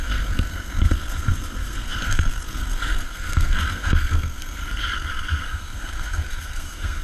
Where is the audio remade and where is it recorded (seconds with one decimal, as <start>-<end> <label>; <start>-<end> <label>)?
0.0-7.0 remade